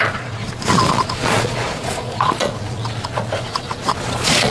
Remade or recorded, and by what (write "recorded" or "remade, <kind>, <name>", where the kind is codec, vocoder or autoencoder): remade, vocoder, Vocos